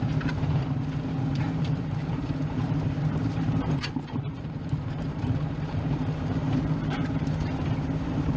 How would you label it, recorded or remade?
remade